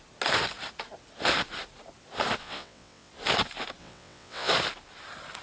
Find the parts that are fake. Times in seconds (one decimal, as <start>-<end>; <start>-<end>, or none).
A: 2.4-3.1; 3.8-4.5